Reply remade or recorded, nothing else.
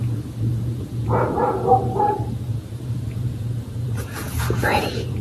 remade